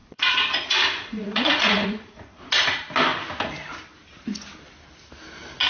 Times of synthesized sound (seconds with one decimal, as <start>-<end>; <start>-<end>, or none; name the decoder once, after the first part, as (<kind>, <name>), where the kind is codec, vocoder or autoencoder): 0.0-2.4 (vocoder, Vocos)